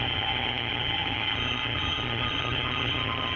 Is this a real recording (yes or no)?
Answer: no